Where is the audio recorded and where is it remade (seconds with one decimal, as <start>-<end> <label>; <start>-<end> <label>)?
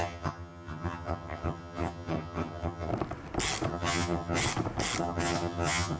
0.0-2.9 remade; 2.9-3.7 recorded; 3.7-4.4 remade; 4.4-5.0 recorded; 5.0-6.0 remade